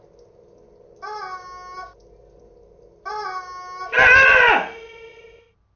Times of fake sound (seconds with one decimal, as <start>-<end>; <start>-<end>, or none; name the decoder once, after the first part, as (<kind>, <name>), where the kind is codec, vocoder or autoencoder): none